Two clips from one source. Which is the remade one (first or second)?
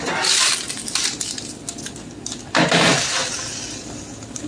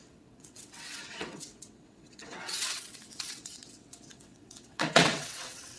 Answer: second